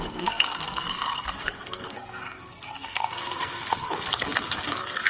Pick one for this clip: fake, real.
fake